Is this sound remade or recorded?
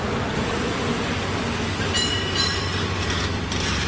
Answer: recorded